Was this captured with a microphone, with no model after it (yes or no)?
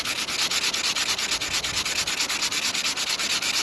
yes